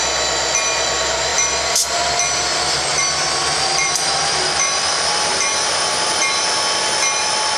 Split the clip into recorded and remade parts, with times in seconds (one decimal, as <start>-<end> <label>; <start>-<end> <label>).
0.0-2.9 recorded; 2.9-5.7 remade; 5.7-7.6 recorded